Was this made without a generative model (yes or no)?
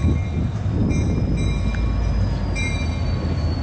yes